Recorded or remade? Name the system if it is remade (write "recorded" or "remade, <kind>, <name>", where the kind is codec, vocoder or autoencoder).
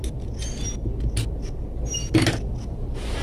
recorded